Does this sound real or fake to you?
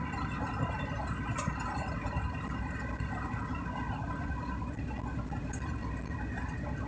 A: real